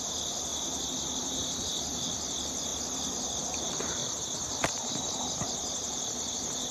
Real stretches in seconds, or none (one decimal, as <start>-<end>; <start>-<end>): 2.7-3.4; 4.0-6.3